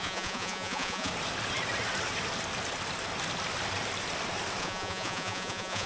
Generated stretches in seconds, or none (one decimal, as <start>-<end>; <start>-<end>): 0.0-1.1; 4.6-5.9